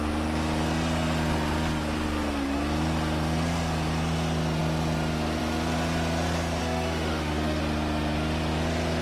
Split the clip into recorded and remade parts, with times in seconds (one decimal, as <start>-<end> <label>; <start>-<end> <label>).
0.0-6.6 recorded; 6.6-7.6 remade; 7.6-9.0 recorded